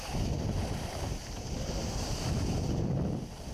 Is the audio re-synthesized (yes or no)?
yes